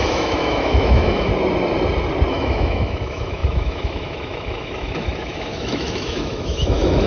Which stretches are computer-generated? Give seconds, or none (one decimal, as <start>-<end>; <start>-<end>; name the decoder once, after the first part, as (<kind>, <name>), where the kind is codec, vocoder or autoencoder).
0.0-1.3 (autoencoder, DAC-VAE); 2.3-7.1